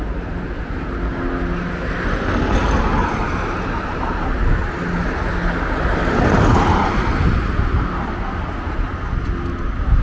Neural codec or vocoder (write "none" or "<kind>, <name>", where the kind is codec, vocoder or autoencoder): none